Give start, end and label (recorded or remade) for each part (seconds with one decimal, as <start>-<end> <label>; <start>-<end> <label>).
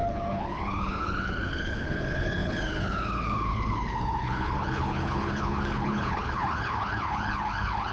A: 0.0-7.9 remade